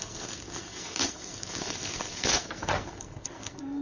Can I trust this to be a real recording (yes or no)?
no